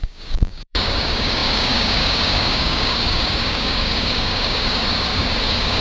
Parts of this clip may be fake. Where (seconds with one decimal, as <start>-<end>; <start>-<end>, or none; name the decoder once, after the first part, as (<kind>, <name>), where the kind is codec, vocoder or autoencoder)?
0.0-5.8 (codec, DAC)